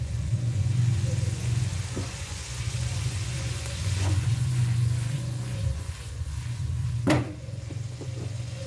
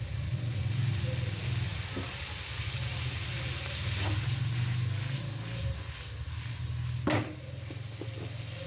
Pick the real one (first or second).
second